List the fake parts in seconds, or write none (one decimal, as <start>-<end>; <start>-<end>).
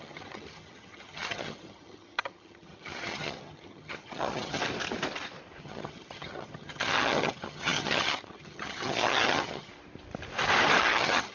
0.0-4.6; 5.6-9.7; 10.8-11.3